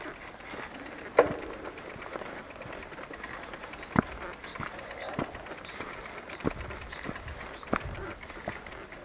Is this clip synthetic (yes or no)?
no